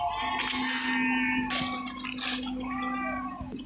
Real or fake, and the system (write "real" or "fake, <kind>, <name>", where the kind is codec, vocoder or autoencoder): real